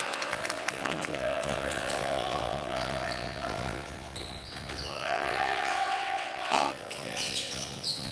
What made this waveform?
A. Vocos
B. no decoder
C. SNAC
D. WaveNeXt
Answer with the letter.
D